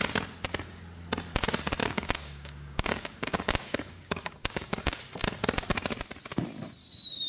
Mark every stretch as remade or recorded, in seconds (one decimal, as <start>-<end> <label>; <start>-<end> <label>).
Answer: 0.0-1.8 recorded; 1.8-5.0 remade; 5.0-7.3 recorded